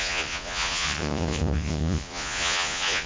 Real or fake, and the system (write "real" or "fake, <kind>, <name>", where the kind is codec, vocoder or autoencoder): fake, vocoder, Vocos